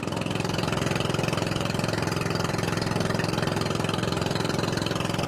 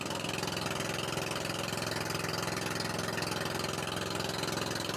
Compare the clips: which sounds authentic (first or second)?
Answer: second